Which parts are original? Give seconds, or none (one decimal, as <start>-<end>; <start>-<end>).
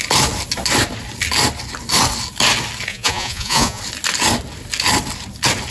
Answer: 0.0-2.9; 3.8-5.7